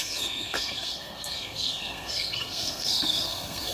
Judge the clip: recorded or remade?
remade